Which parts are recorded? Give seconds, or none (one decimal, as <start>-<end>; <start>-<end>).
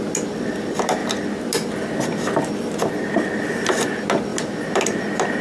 0.0-5.4